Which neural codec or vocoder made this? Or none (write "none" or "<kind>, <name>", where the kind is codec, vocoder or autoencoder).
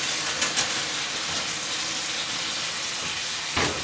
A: none